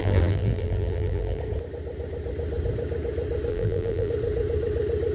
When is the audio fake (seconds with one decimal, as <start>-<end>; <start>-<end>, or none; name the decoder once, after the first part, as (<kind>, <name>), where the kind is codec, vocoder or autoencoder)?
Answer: 0.0-1.4 (vocoder, BigVGAN v2); 3.5-4.1